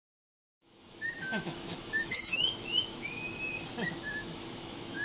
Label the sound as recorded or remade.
remade